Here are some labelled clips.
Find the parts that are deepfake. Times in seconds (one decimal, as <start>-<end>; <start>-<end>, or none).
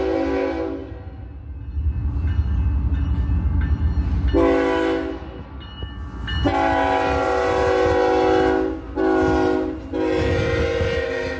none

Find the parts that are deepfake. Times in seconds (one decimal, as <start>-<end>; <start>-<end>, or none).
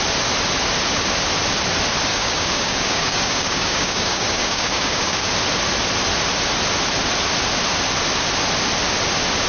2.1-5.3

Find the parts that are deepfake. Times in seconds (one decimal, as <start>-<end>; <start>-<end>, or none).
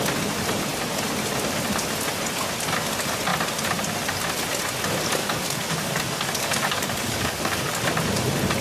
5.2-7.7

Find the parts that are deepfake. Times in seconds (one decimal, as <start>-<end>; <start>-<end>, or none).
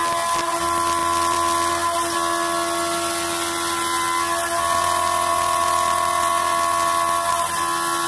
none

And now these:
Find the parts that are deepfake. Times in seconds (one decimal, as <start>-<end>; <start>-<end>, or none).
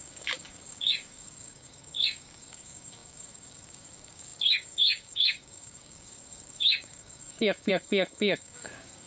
0.0-9.1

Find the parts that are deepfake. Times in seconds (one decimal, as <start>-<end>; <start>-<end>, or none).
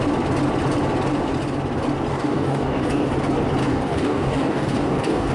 2.1-3.1; 3.6-5.3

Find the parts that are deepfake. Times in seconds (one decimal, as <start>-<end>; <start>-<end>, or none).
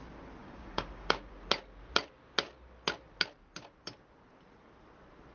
0.4-1.3